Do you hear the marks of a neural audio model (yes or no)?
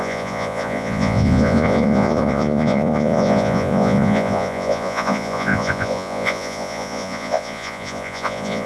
yes